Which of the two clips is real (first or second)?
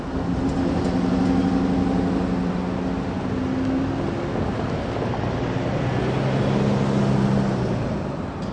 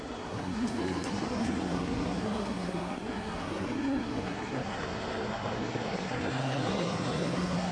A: first